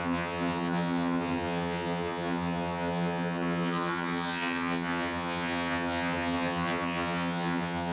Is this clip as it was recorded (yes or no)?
no